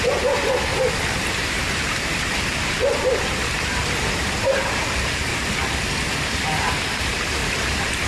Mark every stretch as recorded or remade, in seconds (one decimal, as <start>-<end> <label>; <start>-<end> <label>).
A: 0.0-0.7 remade; 0.7-1.3 recorded; 1.3-5.3 remade; 5.3-6.2 recorded; 6.2-7.4 remade; 7.4-8.1 recorded